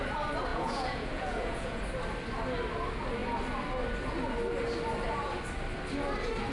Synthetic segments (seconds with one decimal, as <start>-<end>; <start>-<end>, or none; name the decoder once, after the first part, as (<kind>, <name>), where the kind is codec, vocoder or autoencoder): 0.5-1.8 (vocoder, Vocos)